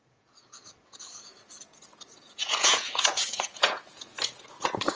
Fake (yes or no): yes